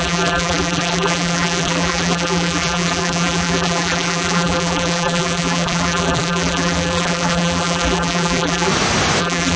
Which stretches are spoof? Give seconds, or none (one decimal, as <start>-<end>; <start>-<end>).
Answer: 0.0-8.7; 9.2-9.6